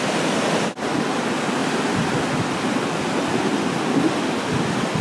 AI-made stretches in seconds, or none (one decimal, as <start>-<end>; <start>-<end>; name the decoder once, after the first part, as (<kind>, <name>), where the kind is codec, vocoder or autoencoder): none

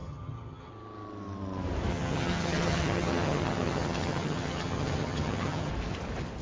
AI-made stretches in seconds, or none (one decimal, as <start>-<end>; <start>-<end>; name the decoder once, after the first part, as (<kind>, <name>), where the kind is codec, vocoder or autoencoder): 0.0-0.7 (vocoder, HiFi-GAN); 1.9-5.7